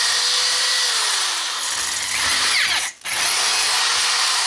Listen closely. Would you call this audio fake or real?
real